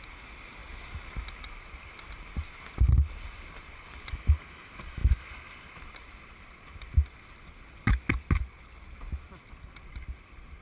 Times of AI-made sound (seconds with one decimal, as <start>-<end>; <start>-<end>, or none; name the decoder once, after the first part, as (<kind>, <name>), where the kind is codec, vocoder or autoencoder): none